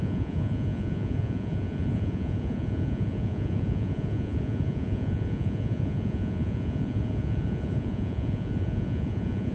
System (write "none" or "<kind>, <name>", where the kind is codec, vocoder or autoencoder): vocoder, Vocos